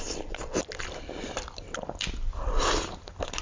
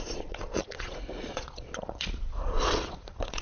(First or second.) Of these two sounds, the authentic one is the first